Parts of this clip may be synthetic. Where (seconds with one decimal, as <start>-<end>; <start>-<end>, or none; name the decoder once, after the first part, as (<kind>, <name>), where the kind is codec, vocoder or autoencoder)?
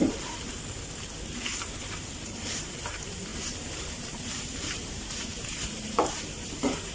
0.0-0.5 (vocoder, BigVGAN v2); 1.6-6.9